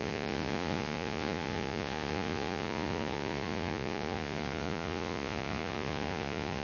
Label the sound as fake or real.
fake